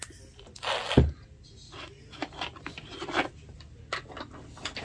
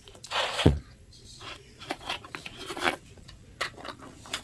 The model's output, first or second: second